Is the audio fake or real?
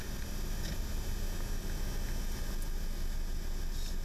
real